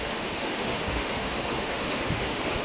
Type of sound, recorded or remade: remade